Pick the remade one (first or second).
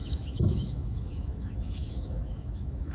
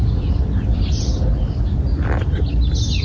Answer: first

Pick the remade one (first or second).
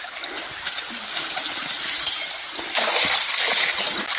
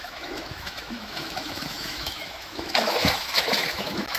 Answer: second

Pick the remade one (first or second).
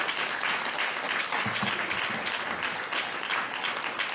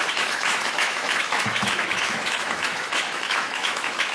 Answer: second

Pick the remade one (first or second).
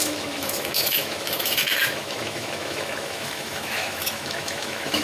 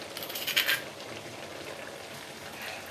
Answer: first